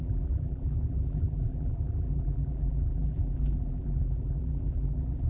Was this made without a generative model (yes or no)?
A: no